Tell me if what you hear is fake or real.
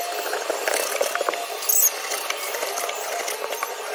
real